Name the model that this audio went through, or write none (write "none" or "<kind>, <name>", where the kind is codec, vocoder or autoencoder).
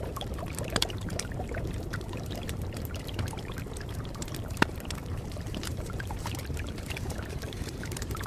vocoder, BigVGAN v2